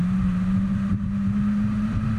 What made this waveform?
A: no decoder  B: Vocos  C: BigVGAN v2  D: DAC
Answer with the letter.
C